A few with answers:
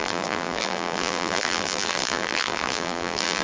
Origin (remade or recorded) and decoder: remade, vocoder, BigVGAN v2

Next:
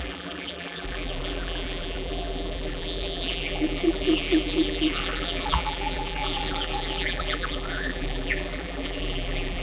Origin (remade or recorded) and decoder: remade, vocoder, BigVGAN v2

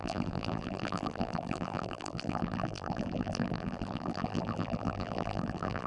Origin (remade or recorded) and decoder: remade, vocoder, BigVGAN v2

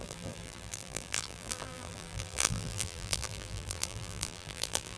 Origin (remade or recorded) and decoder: remade, vocoder, BigVGAN v2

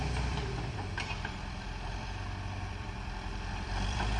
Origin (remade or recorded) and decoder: remade, vocoder, BigVGAN v2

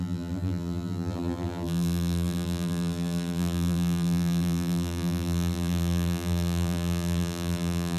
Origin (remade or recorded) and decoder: remade, vocoder, BigVGAN v2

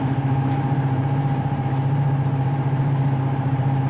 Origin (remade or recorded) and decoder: remade, vocoder, BigVGAN v2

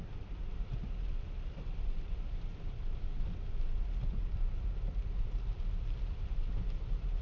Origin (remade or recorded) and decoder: remade, vocoder, BigVGAN v2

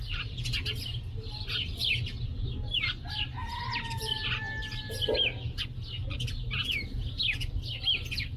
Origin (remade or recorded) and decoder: recorded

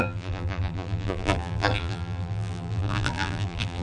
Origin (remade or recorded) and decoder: remade, vocoder, BigVGAN v2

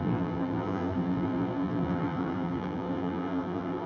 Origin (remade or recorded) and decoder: remade, vocoder, BigVGAN v2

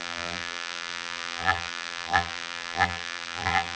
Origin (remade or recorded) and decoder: remade, vocoder, BigVGAN v2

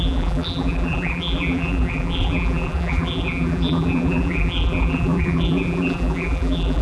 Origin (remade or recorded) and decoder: remade, vocoder, BigVGAN v2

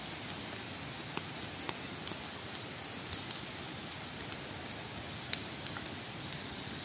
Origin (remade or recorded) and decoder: recorded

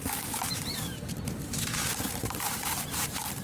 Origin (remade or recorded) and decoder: remade, vocoder, BigVGAN v2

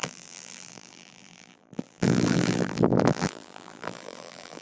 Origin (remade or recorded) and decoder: remade, vocoder, BigVGAN v2